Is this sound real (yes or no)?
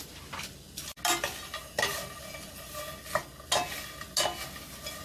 yes